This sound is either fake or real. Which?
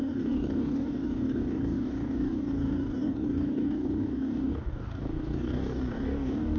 fake